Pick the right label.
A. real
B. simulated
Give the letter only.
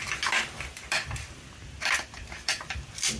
A